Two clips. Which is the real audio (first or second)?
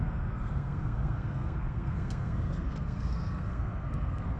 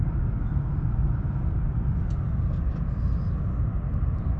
second